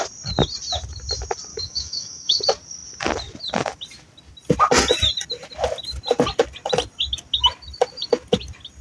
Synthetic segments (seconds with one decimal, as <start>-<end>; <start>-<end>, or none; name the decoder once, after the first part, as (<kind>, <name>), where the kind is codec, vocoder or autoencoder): 1.5-2.4 (autoencoder, DAC-VAE)